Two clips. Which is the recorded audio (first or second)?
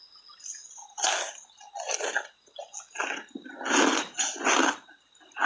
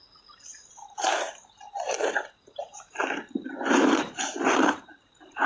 first